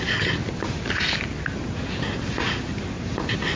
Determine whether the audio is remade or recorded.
recorded